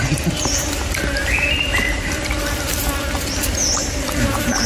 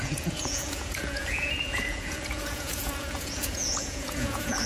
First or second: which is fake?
second